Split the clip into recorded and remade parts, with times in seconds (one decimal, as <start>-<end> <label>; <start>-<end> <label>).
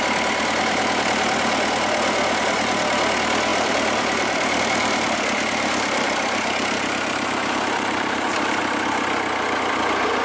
0.0-3.5 recorded; 3.5-8.6 remade; 8.6-10.2 recorded